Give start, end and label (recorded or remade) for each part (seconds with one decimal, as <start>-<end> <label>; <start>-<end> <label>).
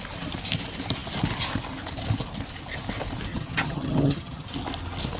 0.0-3.3 recorded; 3.3-4.5 remade; 4.5-5.2 recorded